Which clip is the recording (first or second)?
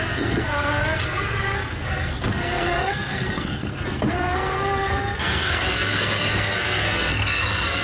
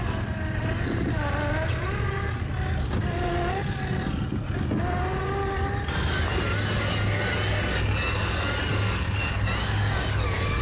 second